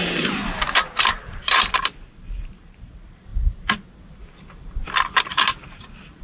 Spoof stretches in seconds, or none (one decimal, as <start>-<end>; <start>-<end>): 0.0-0.4; 1.3-3.3; 5.2-6.2